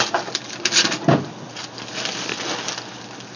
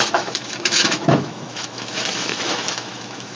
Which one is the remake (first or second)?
second